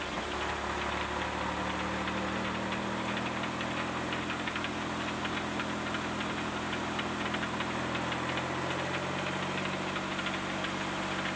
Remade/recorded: recorded